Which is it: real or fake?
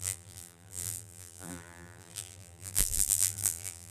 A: fake